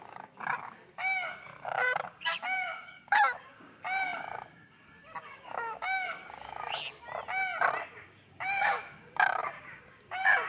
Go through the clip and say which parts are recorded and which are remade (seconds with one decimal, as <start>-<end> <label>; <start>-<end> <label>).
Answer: 0.0-6.8 remade; 6.8-7.8 recorded; 7.8-10.5 remade